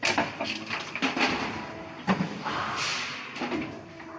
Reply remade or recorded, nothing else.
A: recorded